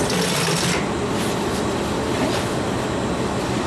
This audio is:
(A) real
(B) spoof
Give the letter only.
A